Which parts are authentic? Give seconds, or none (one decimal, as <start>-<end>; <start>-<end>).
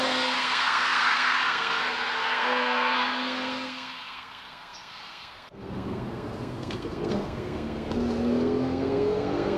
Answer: none